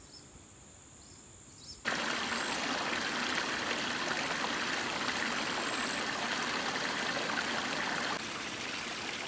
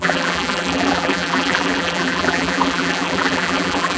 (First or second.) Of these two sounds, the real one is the first